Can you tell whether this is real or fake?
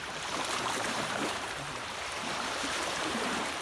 fake